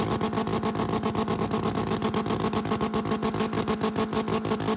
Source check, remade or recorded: recorded